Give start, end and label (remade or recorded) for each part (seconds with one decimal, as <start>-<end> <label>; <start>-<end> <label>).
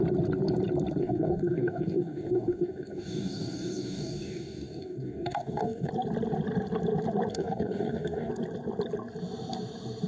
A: 0.0-1.0 recorded; 1.0-5.9 remade; 5.9-7.3 recorded; 7.3-8.3 remade; 8.3-10.1 recorded